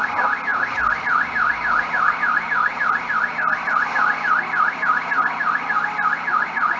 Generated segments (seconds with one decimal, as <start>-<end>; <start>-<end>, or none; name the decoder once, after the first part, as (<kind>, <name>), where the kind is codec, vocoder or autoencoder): none